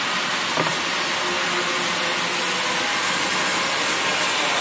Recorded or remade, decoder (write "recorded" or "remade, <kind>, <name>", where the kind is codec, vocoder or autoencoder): recorded